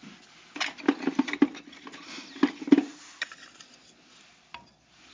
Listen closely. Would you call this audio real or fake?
real